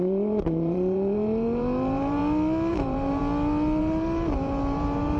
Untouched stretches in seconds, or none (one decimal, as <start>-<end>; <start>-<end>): 2.2-2.7; 3.2-3.8